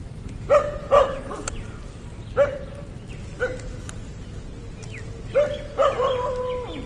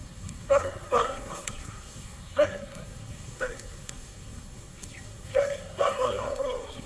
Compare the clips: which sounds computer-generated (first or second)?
second